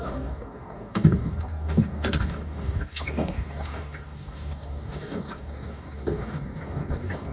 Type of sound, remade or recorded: remade